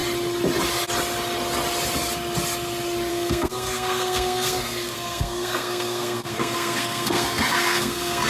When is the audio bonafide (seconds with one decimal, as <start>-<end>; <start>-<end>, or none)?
0.0-3.1